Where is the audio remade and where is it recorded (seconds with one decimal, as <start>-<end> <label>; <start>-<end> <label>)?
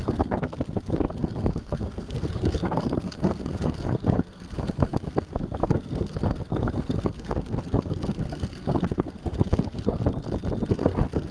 0.0-10.0 remade; 10.0-10.7 recorded; 10.7-11.3 remade